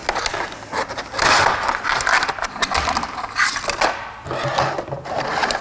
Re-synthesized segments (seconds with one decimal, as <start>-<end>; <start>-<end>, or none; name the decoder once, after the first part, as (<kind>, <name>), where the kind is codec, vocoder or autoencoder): none